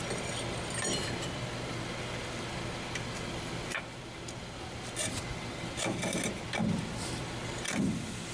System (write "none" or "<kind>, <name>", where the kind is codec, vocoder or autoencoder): none